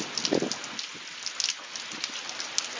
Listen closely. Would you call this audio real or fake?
real